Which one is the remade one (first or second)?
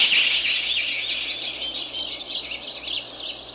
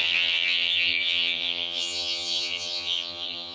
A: second